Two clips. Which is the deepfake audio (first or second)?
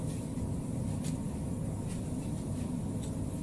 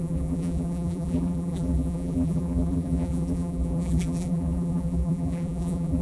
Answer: second